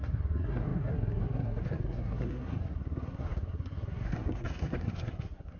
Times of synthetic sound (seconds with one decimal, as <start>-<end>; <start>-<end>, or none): 0.0-5.6